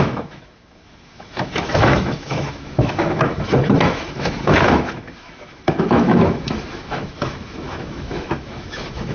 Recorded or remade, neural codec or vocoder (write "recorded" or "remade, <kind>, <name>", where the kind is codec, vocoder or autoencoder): remade, autoencoder, DAC-VAE